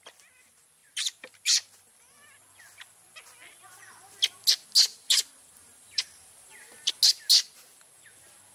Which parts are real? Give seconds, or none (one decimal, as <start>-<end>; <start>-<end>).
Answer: 0.0-0.8; 1.8-4.9; 6.9-8.5